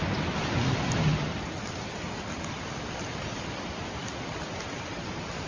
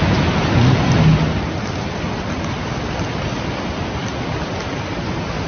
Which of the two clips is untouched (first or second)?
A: second